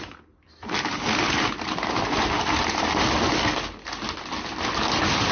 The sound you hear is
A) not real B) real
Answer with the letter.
B